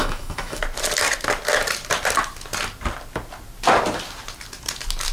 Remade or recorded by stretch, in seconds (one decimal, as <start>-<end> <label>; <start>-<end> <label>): 0.0-0.6 remade; 0.6-5.1 recorded